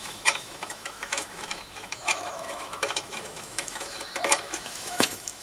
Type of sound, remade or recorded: remade